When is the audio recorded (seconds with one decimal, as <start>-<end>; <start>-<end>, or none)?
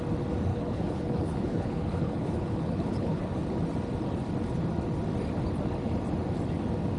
0.0-0.5; 3.2-7.0